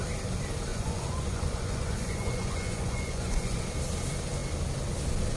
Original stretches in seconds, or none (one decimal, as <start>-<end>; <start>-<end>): 0.0-0.7; 3.6-5.4